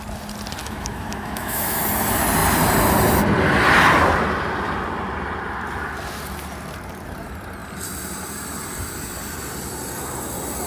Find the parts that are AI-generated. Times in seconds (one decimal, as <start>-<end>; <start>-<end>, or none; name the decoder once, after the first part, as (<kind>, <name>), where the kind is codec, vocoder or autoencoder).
0.6-1.8 (autoencoder, DAC-VAE)

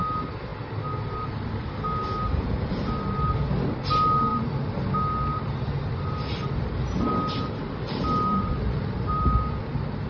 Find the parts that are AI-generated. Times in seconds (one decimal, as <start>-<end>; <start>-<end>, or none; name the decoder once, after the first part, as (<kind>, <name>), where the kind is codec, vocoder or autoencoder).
4.3-4.8 (vocoder, BigVGAN v2); 5.3-9.2

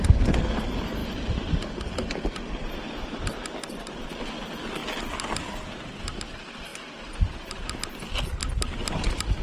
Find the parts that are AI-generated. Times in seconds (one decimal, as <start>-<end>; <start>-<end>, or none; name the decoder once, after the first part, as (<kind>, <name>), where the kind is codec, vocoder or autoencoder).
6.7-7.8 (vocoder, BigVGAN v2); 8.4-9.4

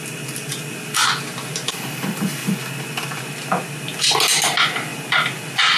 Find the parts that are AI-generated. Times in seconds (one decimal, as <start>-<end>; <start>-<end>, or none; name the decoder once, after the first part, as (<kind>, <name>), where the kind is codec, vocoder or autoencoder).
none

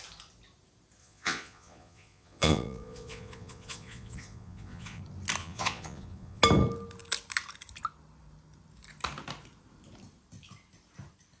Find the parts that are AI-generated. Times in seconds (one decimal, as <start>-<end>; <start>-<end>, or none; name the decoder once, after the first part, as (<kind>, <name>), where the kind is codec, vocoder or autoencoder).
1.0-5.0 (vocoder, Vocos); 5.4-6.4